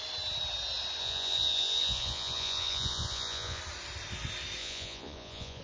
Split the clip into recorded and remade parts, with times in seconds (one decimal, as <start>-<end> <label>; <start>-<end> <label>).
0.0-1.0 recorded; 1.0-3.6 remade; 3.6-4.6 recorded; 4.6-5.6 remade